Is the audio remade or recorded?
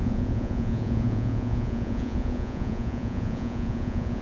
remade